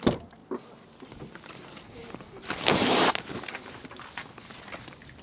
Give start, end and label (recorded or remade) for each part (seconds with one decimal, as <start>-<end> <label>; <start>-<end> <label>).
0.0-2.0 recorded; 2.0-3.1 remade; 3.1-5.2 recorded